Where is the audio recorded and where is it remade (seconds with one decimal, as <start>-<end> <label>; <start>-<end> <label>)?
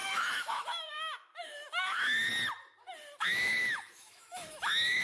0.0-2.3 remade; 2.3-3.2 recorded; 3.2-5.0 remade